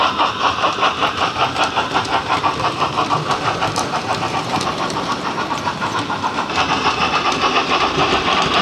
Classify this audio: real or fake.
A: fake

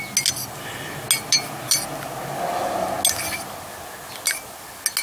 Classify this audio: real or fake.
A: real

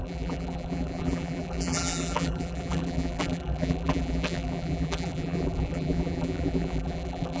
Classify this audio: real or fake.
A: fake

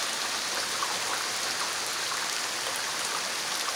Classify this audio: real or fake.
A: real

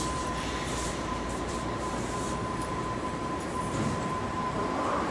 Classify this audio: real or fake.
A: fake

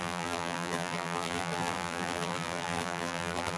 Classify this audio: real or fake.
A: fake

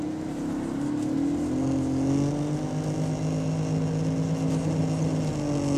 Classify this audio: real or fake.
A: real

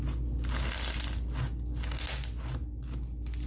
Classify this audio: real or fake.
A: real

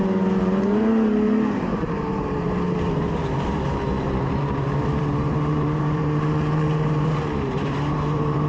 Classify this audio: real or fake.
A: fake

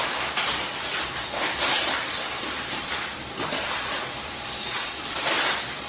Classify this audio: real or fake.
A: fake